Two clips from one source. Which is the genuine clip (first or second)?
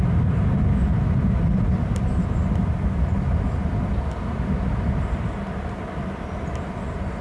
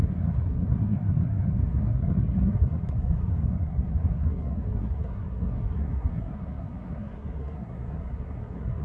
first